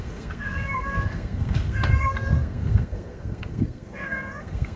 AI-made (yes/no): yes